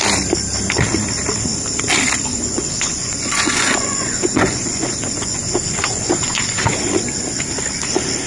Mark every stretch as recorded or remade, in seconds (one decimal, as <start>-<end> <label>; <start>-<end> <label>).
0.0-2.3 recorded; 2.3-6.6 remade; 6.6-8.3 recorded